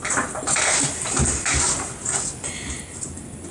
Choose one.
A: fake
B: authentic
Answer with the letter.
B